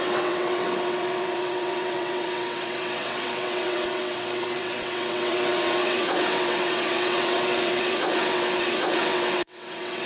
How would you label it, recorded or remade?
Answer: remade